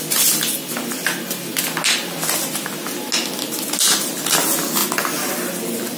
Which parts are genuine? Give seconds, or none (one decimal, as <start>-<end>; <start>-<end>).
0.0-6.0